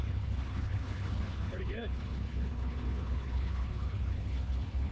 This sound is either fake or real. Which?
fake